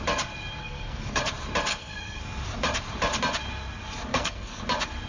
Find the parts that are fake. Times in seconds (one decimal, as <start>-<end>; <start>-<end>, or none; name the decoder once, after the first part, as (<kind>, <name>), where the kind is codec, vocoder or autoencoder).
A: 0.6-1.2 (codec, SNAC); 1.7-2.2; 4.1-4.6